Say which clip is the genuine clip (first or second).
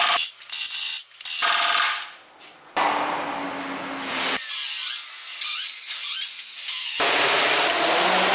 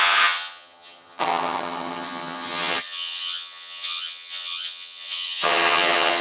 first